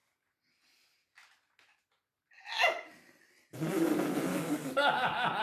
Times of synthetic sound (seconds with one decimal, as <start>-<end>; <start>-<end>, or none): 4.3-5.4